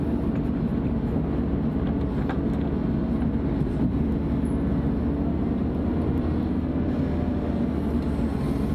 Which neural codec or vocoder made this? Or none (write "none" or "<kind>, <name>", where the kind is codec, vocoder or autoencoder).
none